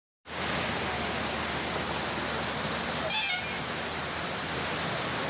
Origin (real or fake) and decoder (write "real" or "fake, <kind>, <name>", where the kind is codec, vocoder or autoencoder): real